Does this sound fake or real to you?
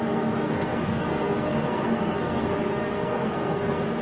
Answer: fake